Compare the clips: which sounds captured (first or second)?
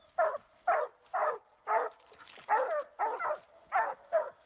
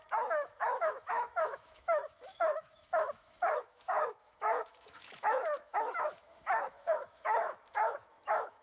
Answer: first